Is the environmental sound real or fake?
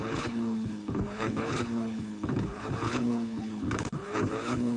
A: fake